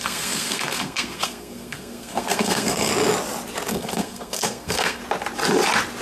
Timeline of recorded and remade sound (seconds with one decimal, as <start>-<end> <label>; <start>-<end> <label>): 0.0-2.9 remade; 2.9-3.7 recorded; 3.7-5.0 remade; 5.0-6.0 recorded